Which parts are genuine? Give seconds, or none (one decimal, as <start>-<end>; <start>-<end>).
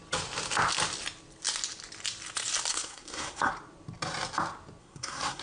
0.0-2.7; 3.5-4.8